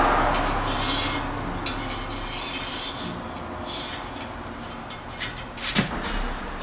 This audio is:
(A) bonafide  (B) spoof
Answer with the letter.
A